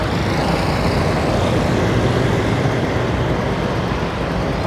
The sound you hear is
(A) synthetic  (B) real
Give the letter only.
B